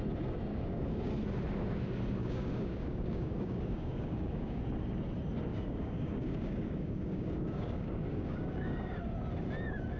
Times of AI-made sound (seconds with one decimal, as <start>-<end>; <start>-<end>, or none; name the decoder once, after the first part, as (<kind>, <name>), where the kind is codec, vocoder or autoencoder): 0.5-1.1 (codec, DAC); 2.2-4.6; 5.5-9.0